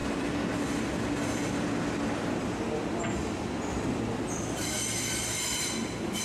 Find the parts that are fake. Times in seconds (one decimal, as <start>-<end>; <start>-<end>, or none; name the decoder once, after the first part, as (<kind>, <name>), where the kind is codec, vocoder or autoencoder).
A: none